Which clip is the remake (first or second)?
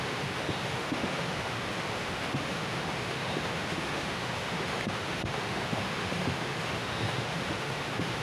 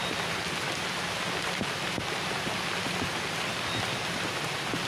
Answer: first